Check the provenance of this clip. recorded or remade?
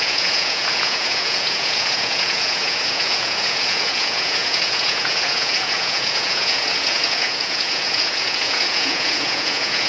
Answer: remade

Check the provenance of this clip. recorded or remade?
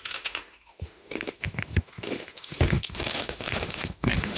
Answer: remade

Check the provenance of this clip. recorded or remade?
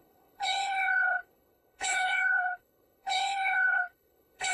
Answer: remade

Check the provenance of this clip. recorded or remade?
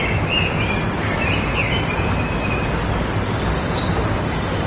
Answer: recorded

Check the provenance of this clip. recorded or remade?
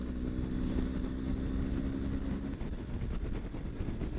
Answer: recorded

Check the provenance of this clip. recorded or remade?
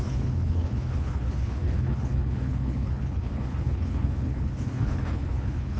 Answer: remade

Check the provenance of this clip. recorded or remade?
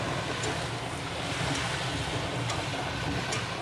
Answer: recorded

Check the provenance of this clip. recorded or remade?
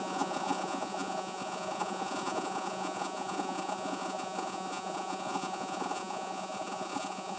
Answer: remade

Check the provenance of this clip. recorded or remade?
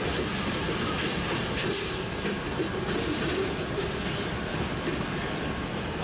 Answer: recorded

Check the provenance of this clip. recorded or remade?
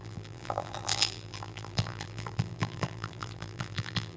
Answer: remade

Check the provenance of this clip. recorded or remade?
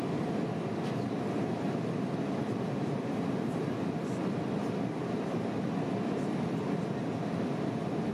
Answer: recorded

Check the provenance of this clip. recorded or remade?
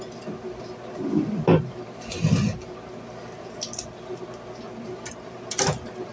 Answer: recorded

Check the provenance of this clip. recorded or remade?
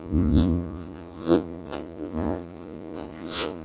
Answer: remade